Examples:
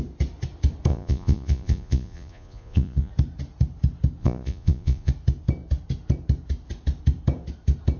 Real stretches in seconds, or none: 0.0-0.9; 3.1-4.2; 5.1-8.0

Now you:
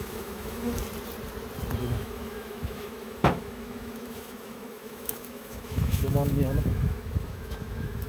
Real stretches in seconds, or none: 0.8-1.8

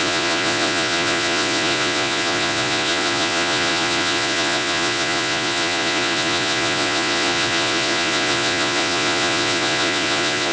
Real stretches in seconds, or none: none

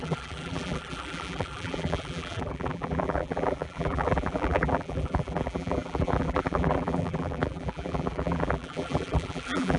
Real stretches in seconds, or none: none